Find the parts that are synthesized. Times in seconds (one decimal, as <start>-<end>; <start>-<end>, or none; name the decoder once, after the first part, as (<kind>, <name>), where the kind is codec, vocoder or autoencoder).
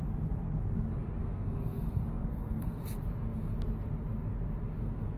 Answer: 1.2-2.8 (codec, SNAC); 4.8-5.2